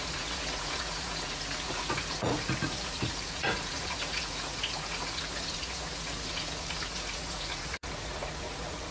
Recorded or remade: remade